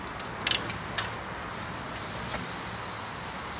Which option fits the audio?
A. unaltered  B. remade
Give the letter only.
A